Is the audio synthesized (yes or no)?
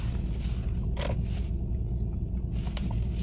no